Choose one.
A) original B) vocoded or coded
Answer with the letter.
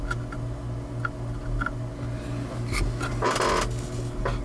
A